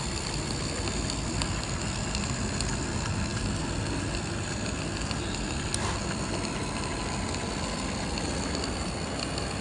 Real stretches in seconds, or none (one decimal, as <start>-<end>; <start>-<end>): 0.0-9.6